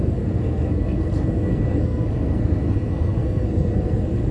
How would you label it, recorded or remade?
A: remade